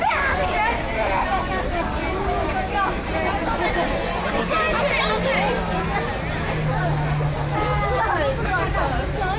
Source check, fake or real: real